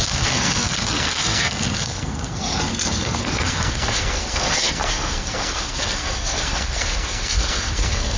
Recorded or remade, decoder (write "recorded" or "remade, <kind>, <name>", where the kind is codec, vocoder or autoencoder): remade, codec, SNAC